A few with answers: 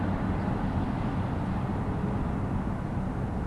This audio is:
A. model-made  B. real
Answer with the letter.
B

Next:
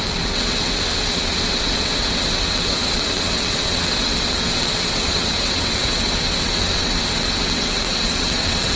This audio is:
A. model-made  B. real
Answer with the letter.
A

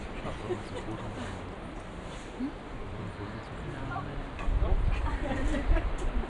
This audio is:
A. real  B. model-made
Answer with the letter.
B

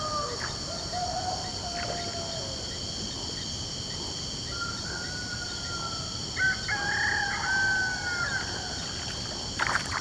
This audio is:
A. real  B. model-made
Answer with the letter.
A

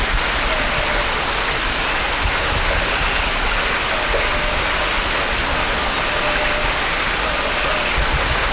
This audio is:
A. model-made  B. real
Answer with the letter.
B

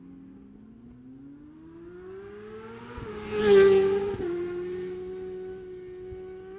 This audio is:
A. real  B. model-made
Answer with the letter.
A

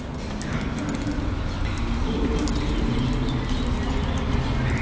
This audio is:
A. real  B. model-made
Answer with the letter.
A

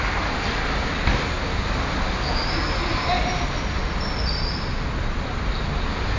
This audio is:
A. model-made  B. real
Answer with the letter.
B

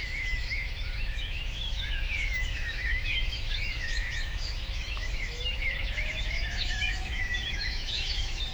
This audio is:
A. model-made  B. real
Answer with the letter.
A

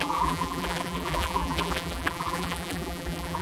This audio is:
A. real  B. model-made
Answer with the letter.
B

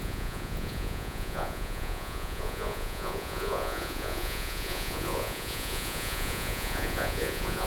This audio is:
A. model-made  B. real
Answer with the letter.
A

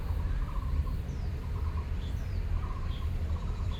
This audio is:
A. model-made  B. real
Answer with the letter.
A